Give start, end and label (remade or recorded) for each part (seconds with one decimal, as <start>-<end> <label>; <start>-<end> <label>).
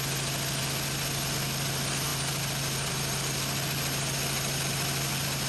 0.0-5.5 recorded